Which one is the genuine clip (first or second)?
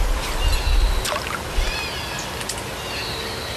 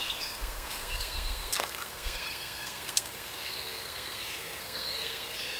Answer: first